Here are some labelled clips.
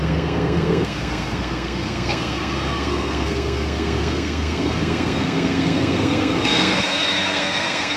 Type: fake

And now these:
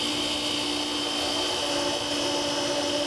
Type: real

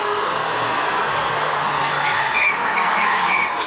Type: fake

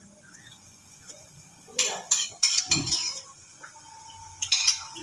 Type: fake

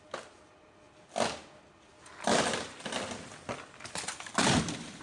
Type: real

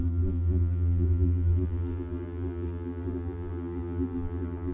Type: fake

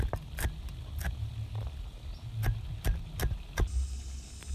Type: real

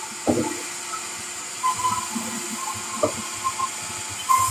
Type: real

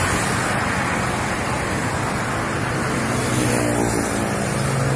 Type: real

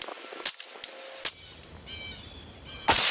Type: real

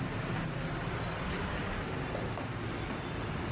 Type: real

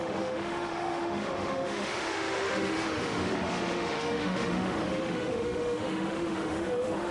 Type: fake